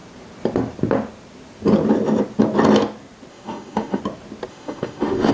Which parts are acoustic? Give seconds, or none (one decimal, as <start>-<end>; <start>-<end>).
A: 0.0-3.3; 4.0-4.5